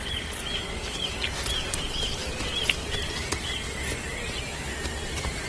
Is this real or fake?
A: real